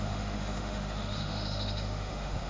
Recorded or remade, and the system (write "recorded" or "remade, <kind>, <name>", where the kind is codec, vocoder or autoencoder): remade, autoencoder, DAC-VAE